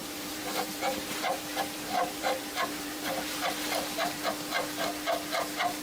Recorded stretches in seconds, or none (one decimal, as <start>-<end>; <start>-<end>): 3.5-5.8